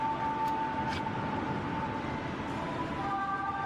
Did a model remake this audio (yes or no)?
no